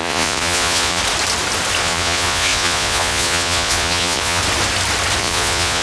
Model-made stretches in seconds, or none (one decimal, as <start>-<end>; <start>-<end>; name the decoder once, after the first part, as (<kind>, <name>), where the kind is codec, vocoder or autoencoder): 0.0-1.0 (vocoder, Vocos); 1.8-4.4; 5.2-5.8